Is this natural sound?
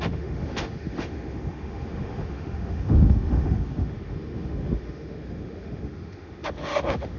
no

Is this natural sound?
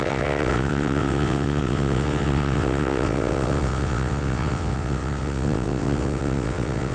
no